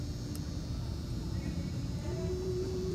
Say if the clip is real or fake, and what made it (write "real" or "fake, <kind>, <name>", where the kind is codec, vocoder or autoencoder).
fake, vocoder, BigVGAN v2